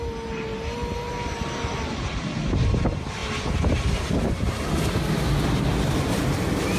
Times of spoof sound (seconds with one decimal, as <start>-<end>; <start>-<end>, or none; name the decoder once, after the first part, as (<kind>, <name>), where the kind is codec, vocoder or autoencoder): none

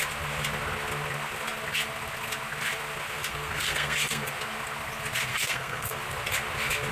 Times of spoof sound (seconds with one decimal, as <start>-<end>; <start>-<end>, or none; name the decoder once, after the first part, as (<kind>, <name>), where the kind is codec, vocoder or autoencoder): 3.3-4.3 (codec, SNAC); 5.3-6.0

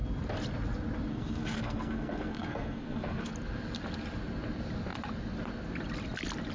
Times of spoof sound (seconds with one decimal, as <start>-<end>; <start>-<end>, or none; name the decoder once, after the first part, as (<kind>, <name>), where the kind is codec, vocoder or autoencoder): 1.1-3.3 (codec, SNAC)

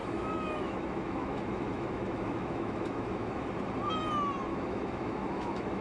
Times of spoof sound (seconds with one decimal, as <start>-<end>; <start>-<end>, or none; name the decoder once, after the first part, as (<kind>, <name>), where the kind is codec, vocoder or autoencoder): 0.0-3.5 (autoencoder, DAC-VAE); 4.5-5.8

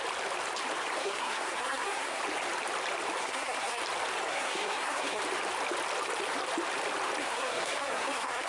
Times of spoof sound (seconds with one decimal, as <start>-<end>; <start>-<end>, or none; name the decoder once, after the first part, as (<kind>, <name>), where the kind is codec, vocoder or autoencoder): 1.0-2.2 (codec, SNAC); 3.2-3.8; 4.3-5.2; 7.2-8.5

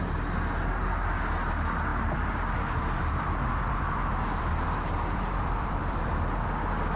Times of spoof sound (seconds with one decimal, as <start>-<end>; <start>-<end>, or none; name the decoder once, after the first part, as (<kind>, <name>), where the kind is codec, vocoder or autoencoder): 1.9-6.1 (vocoder, BigVGAN v2)